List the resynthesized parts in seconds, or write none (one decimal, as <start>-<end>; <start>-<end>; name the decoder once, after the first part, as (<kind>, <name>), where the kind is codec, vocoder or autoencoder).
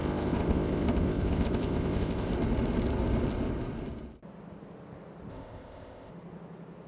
0.0-2.3 (codec, ZipCodec); 5.3-6.1